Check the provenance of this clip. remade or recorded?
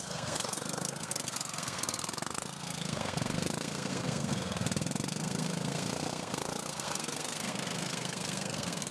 remade